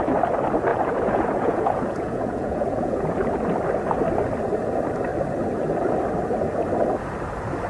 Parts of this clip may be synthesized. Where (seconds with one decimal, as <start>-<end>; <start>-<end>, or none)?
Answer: 0.7-3.1

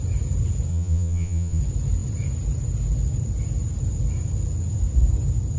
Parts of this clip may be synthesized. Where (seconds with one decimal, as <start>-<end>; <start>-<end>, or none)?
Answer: 0.7-1.6

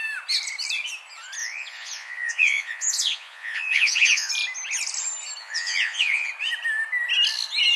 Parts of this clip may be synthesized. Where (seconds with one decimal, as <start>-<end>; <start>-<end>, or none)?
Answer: 1.4-4.3; 5.4-6.3